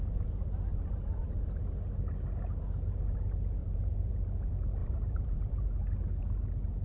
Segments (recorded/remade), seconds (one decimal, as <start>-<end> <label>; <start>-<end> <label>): 0.0-0.7 recorded; 0.7-1.3 remade; 1.3-3.6 recorded; 3.6-4.1 remade; 4.1-4.8 recorded; 4.8-5.7 remade; 5.7-6.8 recorded